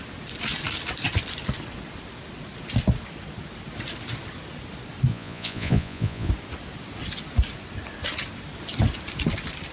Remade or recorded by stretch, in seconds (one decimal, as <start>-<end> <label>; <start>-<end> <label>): 0.0-5.1 recorded; 5.1-6.3 remade; 6.3-9.7 recorded